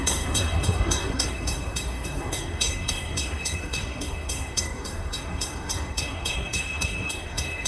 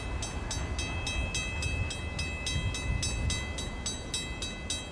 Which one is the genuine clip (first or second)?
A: second